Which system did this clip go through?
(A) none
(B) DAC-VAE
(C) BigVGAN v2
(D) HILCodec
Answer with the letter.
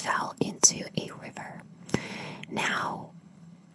D